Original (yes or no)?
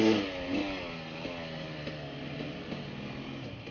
yes